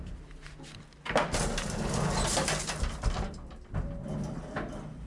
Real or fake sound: real